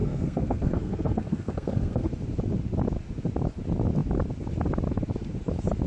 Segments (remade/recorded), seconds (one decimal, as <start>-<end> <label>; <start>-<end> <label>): 0.0-2.1 remade; 2.1-5.9 recorded